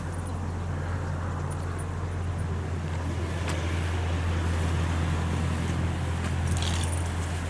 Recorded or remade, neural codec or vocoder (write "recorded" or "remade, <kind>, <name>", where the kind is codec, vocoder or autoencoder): recorded